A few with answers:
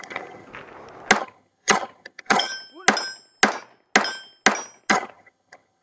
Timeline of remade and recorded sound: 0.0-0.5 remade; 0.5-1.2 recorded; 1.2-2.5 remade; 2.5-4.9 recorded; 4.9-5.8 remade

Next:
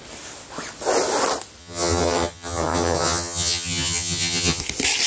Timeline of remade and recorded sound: 0.0-1.6 recorded; 1.6-4.6 remade; 4.6-5.1 recorded

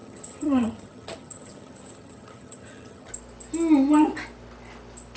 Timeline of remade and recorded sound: 0.0-3.1 remade; 3.1-5.2 recorded

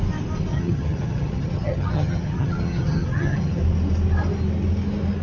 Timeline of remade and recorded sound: 0.0-0.5 recorded; 0.5-3.6 remade; 3.6-5.2 recorded